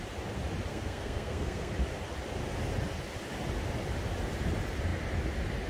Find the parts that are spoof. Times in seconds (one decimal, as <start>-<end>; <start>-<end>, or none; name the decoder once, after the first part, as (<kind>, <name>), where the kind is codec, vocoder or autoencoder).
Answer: 0.7-1.7 (codec, SNAC)